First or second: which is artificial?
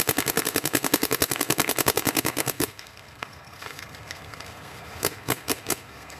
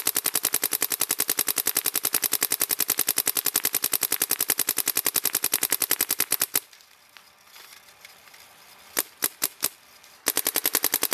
first